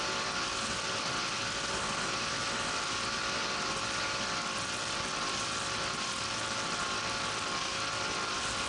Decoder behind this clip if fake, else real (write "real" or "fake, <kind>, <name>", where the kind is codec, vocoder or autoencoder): real